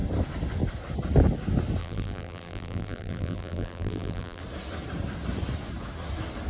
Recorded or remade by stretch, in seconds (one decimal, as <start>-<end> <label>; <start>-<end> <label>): 0.0-1.8 recorded; 1.8-4.4 remade; 4.4-6.5 recorded